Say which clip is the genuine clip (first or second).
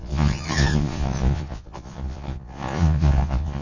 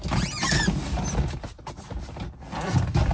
second